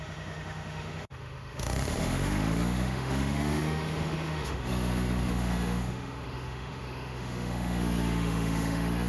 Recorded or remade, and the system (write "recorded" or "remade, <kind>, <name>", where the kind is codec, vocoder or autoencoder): remade, autoencoder, DAC-VAE